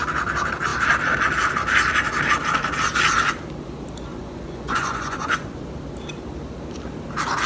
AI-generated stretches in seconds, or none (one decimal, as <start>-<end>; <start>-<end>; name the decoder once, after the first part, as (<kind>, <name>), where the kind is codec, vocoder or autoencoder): 4.1-5.6 (vocoder, Vocos)